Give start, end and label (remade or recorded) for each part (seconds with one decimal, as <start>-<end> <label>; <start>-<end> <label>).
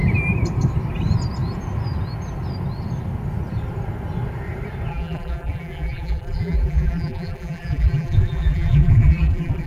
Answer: 0.0-4.9 recorded; 4.9-9.7 remade